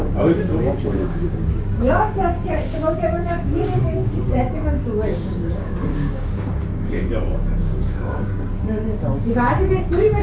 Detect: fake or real fake